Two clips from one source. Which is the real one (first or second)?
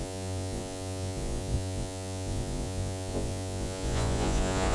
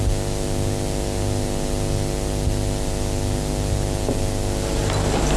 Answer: second